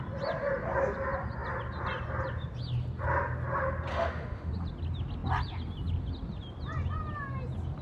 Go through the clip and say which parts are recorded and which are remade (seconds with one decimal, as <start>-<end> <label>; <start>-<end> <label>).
0.0-3.9 recorded; 3.9-4.5 remade; 4.5-7.8 recorded

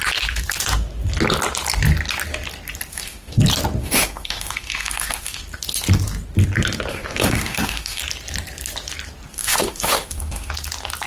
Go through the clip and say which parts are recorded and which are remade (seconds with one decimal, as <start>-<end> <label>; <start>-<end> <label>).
0.0-2.9 recorded; 2.9-3.4 remade; 3.4-3.8 recorded; 3.8-5.4 remade; 5.4-6.9 recorded; 6.9-8.0 remade; 8.0-9.3 recorded; 9.3-10.5 remade; 10.5-11.1 recorded

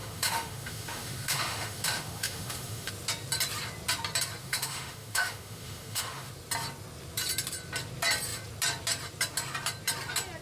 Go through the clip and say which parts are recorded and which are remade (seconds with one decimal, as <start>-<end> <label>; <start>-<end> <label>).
0.0-2.9 remade; 2.9-4.4 recorded; 4.4-6.3 remade; 6.3-10.4 recorded

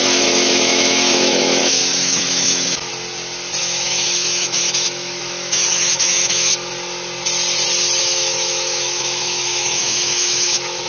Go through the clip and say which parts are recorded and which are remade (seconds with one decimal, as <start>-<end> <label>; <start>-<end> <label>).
0.0-2.9 remade; 2.9-3.6 recorded; 3.6-6.5 remade; 6.5-8.0 recorded; 8.0-10.9 remade

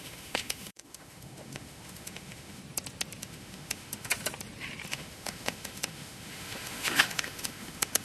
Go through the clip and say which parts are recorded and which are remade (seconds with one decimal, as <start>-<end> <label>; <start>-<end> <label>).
0.0-2.6 remade; 2.6-3.2 recorded; 3.2-4.1 remade; 4.1-4.9 recorded; 4.9-8.0 remade